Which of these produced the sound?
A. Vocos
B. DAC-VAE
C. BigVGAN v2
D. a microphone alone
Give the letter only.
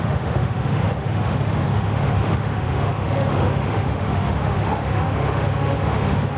B